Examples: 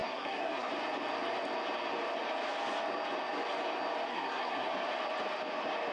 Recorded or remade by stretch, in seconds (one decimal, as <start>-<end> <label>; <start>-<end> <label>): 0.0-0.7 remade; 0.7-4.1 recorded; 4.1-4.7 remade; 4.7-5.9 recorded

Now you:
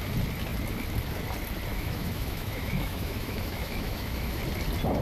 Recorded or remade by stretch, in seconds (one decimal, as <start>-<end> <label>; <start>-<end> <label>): 0.0-1.7 recorded; 1.7-4.4 remade; 4.4-5.0 recorded

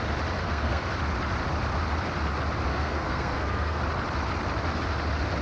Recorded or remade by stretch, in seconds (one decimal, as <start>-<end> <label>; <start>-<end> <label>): 0.0-0.4 recorded; 0.4-0.9 remade; 0.9-2.7 recorded; 2.7-3.8 remade; 3.8-5.4 recorded